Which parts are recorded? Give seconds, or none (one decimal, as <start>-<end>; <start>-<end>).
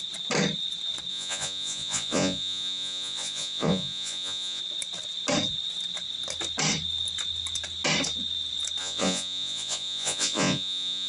0.0-1.1; 4.6-8.8